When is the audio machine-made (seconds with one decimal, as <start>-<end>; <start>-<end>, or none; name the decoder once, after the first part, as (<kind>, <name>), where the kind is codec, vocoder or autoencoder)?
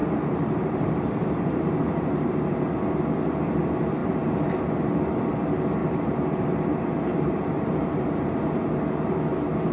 0.0-2.4 (vocoder, BigVGAN v2); 5.8-8.4